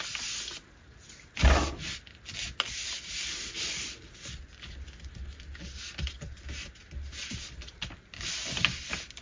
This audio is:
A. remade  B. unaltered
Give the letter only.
B